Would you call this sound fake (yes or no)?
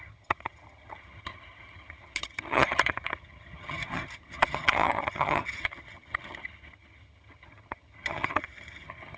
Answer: yes